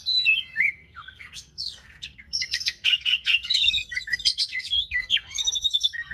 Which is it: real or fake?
fake